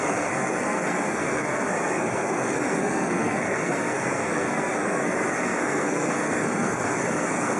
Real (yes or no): no